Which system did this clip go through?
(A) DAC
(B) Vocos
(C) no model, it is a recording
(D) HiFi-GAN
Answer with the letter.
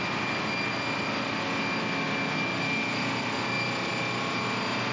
C